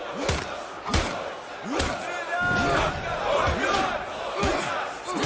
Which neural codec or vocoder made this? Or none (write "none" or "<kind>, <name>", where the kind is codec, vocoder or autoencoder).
none